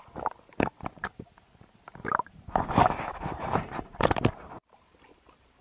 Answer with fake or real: fake